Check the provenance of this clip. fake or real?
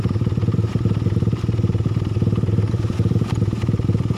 fake